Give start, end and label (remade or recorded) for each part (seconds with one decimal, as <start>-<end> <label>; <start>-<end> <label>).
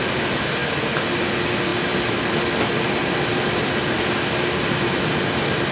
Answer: 0.0-5.7 remade